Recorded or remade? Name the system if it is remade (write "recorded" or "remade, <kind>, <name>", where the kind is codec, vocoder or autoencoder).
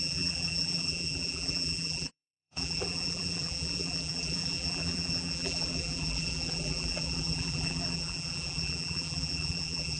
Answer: remade, vocoder, BigVGAN v2